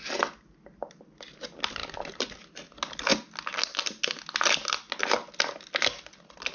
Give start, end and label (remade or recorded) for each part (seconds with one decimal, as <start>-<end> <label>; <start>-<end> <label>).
0.0-6.5 recorded